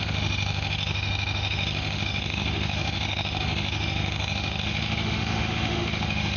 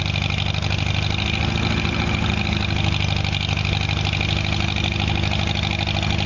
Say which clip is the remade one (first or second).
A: first